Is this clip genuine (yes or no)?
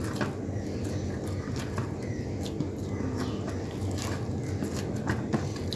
yes